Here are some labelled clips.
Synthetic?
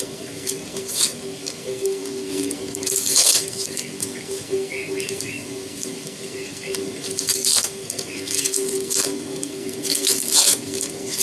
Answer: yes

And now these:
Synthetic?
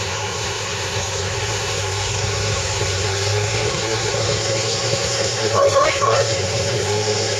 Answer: yes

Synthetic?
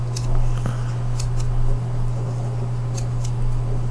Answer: no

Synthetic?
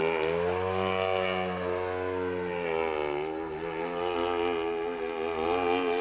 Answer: no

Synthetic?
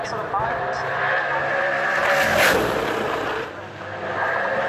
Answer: no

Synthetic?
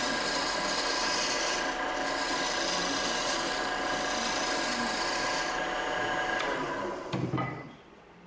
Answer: no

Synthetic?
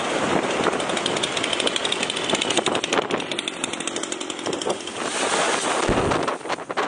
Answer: no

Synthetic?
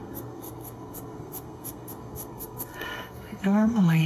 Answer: yes